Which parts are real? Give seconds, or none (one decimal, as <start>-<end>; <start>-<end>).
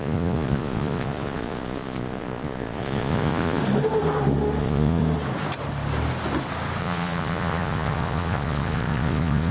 3.6-4.6; 5.0-6.8